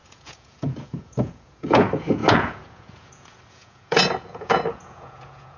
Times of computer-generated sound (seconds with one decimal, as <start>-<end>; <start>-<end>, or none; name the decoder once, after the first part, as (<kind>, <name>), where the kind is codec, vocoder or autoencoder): 0.0-5.6 (vocoder, Vocos)